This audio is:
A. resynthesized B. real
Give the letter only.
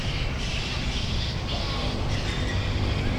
B